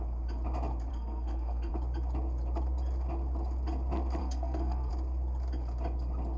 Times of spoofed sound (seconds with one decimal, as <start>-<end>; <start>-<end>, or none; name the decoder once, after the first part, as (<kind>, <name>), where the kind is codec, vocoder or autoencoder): 0.9-1.7 (codec, SNAC); 4.2-4.9